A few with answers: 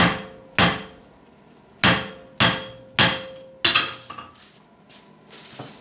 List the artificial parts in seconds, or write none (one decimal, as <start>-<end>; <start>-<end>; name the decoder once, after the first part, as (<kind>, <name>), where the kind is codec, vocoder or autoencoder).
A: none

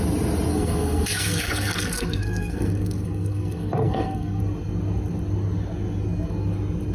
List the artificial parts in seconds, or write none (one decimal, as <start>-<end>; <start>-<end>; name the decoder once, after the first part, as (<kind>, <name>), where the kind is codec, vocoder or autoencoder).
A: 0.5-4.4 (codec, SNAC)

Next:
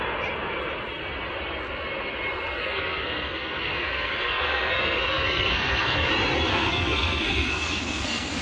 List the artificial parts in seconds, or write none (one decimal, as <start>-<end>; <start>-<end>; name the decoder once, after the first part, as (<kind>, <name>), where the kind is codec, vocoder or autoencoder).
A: 2.6-6.1 (codec, SNAC); 6.5-8.4

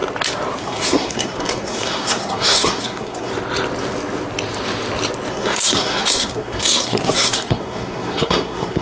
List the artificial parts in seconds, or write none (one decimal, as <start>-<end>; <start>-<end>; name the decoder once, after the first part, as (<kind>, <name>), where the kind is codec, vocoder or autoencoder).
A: 0.6-3.3 (codec, SNAC); 5.3-8.8